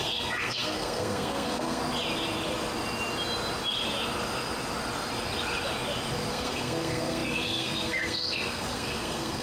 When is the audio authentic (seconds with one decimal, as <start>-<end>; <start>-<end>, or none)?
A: 1.8-6.3